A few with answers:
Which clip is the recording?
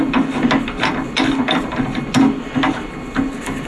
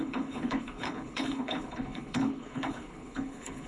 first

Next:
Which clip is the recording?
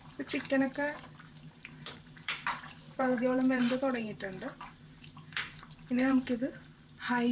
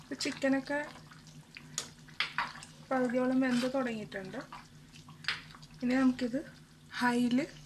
second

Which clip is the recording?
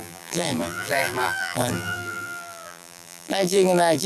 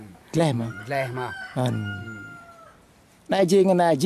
second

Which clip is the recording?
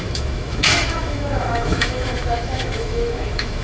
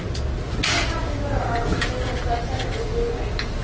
second